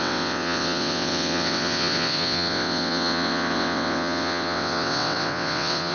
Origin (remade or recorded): remade